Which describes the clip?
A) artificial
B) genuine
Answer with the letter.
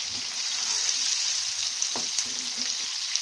B